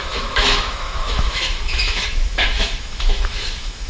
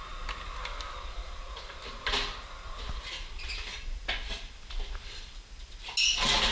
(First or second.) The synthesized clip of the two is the first